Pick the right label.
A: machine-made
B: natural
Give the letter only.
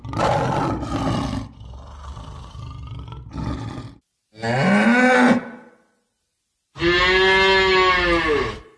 B